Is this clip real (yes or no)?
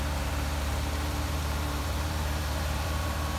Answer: no